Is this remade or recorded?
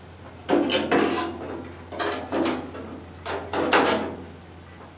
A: recorded